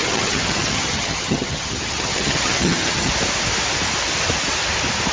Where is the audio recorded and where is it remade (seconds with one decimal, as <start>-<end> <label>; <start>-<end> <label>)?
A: 0.0-3.1 remade; 3.1-5.1 recorded